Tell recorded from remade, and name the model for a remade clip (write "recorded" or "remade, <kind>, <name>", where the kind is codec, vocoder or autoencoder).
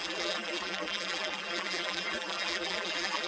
remade, vocoder, BigVGAN v2